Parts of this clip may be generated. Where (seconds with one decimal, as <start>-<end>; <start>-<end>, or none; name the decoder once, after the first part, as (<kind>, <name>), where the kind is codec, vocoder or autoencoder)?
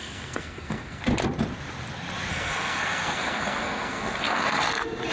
0.0-1.0 (codec, SNAC); 2.3-4.6